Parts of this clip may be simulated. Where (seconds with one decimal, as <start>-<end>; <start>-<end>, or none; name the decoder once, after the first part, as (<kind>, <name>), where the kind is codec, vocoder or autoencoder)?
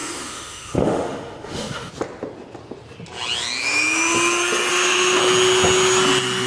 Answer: 0.0-1.9 (autoencoder, DAC-VAE); 4.7-5.2